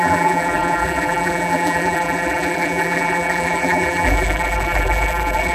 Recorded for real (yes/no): no